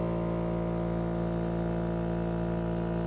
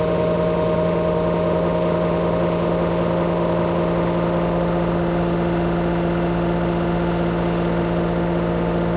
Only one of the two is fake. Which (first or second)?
second